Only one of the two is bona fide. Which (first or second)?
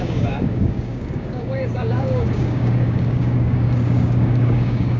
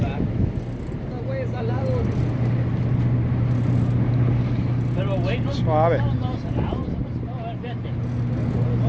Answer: second